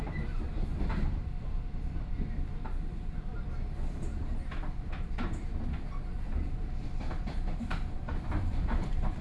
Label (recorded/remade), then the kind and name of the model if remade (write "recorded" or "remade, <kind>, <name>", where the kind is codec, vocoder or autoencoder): recorded